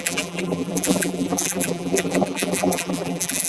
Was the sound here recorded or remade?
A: remade